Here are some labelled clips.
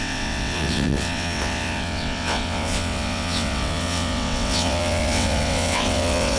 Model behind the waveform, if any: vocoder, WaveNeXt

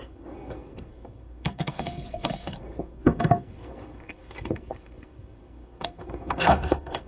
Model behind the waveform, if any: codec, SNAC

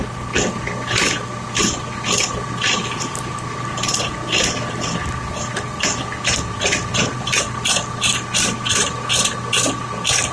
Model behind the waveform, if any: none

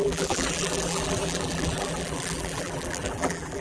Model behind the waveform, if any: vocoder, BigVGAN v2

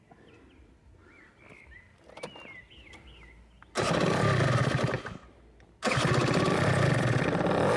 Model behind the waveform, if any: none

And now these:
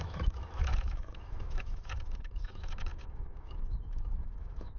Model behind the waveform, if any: autoencoder, DAC-VAE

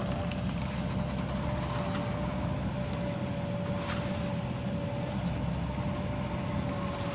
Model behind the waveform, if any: none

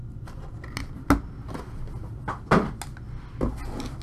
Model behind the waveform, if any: none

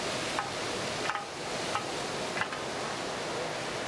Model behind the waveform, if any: none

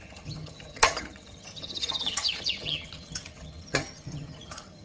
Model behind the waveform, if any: vocoder, HiFi-GAN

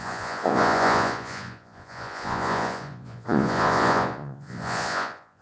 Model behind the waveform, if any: vocoder, Vocos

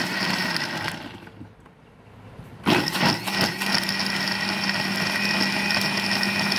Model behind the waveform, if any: none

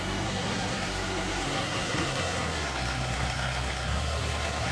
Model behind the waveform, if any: codec, SNAC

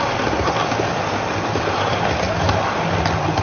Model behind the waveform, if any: none